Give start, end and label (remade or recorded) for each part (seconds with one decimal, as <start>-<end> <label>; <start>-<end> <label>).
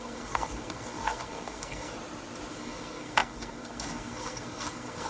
0.0-1.9 remade; 1.9-2.5 recorded; 2.5-5.1 remade